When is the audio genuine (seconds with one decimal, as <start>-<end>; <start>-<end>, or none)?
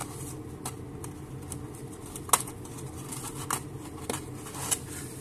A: 0.0-5.2